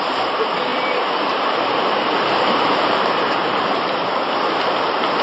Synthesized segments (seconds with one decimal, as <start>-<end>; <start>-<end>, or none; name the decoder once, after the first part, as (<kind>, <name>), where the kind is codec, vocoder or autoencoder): 0.7-3.8 (vocoder, BigVGAN v2)